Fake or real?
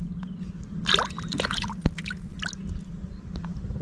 real